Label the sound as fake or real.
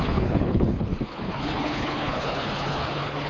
fake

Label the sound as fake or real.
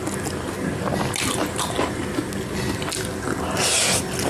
real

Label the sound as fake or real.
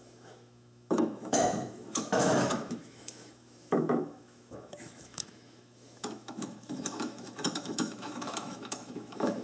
fake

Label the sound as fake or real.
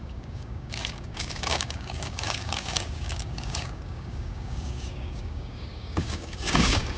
fake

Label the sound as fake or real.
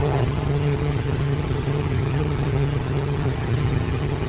fake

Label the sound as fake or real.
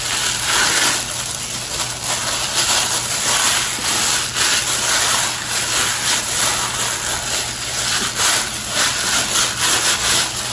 real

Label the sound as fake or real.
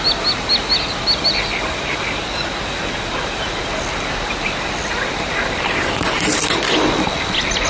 real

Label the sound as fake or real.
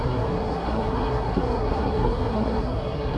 fake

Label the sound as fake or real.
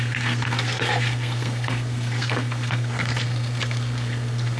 fake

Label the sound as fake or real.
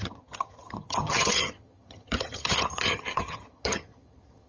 fake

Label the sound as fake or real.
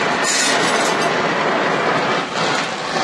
real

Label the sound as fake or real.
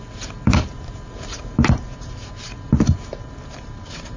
fake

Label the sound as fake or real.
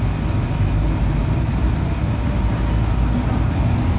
real